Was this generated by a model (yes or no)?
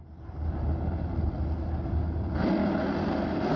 no